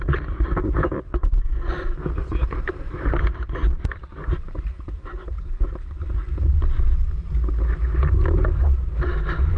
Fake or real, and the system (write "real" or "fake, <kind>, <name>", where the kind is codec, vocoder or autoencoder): real